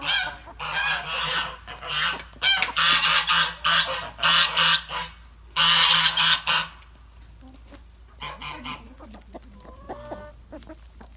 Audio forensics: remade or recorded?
recorded